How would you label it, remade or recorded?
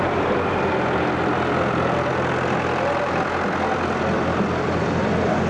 recorded